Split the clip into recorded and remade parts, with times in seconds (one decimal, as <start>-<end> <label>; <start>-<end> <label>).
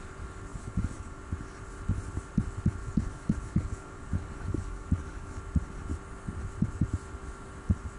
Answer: 0.0-0.5 recorded; 0.5-1.2 remade; 1.2-2.8 recorded; 2.8-5.4 remade; 5.4-8.0 recorded